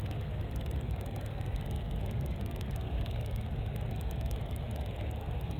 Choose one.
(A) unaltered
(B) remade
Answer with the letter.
B